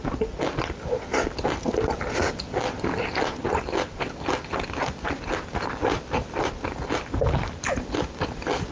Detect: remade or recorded recorded